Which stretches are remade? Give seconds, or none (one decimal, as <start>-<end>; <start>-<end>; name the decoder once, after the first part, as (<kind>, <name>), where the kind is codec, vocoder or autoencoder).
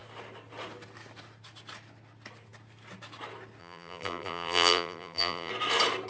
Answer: 3.6-5.5 (vocoder, BigVGAN v2)